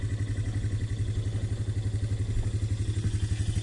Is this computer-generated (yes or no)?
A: no